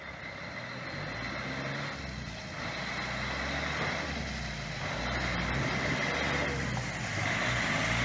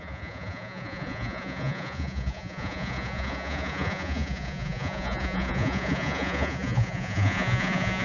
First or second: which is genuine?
first